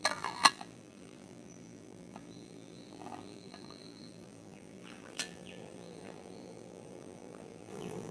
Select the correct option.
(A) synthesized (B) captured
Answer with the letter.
A